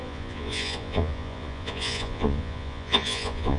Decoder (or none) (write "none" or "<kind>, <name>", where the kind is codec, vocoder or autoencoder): vocoder, Vocos